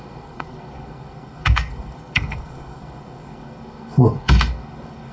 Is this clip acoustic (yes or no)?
no